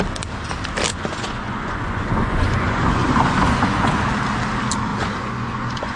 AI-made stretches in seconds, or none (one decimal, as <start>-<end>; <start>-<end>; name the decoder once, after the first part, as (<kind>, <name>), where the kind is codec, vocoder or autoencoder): 0.9-4.0 (vocoder, Vocos); 4.9-6.0